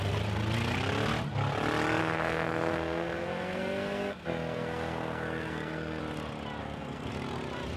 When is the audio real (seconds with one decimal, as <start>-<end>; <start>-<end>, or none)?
0.0-2.0; 6.0-6.6; 7.1-7.8